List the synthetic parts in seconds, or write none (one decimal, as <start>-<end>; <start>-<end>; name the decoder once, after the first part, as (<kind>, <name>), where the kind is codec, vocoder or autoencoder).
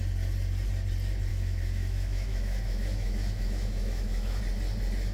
1.3-4.4 (autoencoder, DAC-VAE)